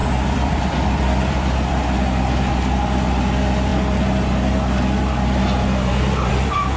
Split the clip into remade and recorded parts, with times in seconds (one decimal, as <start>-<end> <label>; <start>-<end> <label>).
0.0-1.7 remade; 1.7-6.8 recorded